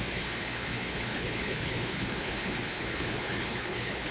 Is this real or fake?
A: fake